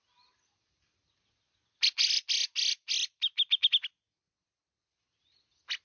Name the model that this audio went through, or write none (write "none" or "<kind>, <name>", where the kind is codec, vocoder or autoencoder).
none